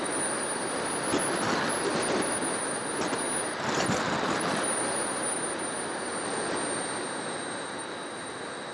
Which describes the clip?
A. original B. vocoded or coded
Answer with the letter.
A